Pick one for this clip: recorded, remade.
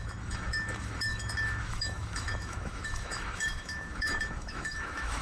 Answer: remade